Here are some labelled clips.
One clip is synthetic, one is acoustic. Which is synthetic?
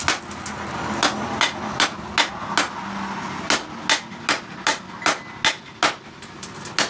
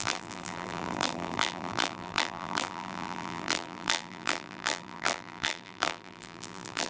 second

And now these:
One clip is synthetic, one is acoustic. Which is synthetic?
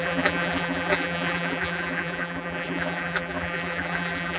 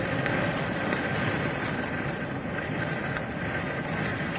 first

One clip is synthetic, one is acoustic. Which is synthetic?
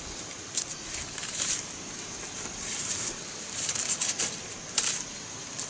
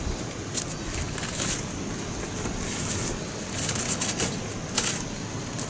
first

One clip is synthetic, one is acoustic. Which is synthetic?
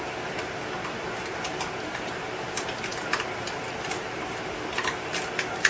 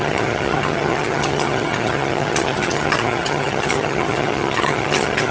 second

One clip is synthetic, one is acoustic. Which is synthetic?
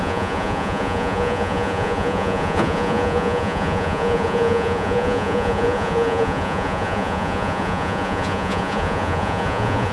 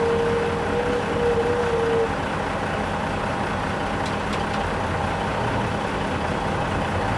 first